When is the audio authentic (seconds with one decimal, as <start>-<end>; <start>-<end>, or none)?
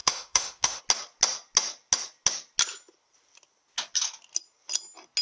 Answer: 0.8-5.2